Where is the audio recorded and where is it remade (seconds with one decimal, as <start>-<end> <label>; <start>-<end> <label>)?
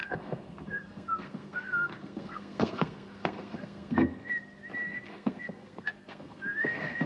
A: 0.0-4.3 remade; 4.3-5.1 recorded; 5.1-7.1 remade